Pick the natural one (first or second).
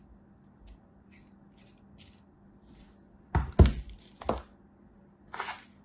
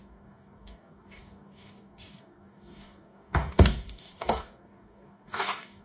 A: first